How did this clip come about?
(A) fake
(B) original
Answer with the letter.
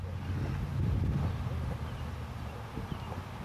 B